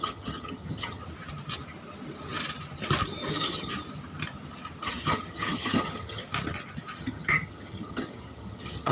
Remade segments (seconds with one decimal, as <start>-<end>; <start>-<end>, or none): 0.0-1.0; 3.3-3.7; 4.8-6.2; 7.0-8.9